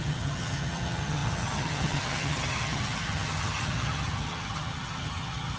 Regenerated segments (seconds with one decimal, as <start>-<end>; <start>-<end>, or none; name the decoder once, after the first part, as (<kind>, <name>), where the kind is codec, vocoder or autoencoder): 0.0-5.6 (vocoder, HiFi-GAN)